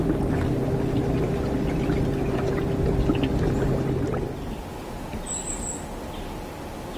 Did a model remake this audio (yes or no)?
no